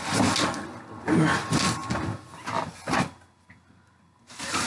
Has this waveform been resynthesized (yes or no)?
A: no